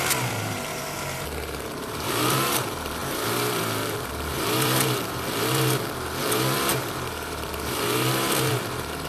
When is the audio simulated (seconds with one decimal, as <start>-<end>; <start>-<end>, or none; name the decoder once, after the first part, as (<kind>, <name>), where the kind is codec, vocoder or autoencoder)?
0.0-9.1 (vocoder, BigVGAN v2)